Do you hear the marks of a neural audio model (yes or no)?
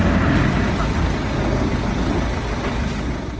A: no